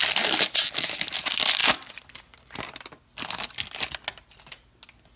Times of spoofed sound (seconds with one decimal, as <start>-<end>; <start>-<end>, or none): 0.0-0.7; 1.6-3.3